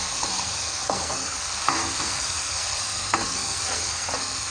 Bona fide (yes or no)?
no